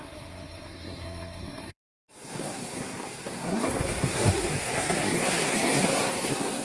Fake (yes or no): yes